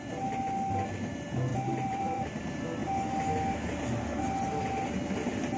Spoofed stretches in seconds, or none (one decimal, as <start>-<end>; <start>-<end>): 1.5-2.4